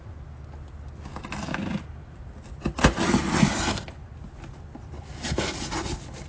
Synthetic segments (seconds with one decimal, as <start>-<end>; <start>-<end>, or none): none